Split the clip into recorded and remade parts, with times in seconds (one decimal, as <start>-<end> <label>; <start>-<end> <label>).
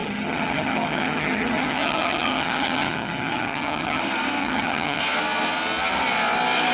0.0-4.0 remade; 4.0-4.4 recorded; 4.4-5.0 remade; 5.0-6.7 recorded